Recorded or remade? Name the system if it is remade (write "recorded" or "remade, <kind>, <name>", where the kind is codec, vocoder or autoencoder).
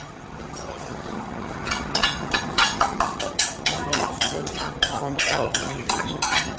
remade, vocoder, HiFi-GAN